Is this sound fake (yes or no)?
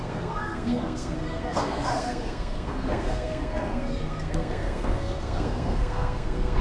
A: yes